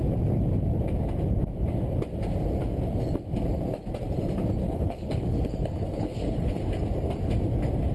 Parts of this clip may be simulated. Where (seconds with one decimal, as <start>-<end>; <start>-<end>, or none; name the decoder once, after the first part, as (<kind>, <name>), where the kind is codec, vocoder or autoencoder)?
4.6-6.6 (codec, HILCodec)